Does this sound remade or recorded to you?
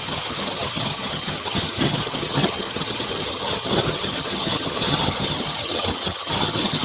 remade